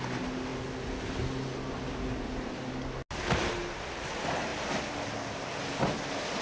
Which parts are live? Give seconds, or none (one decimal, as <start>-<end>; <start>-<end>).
0.0-6.4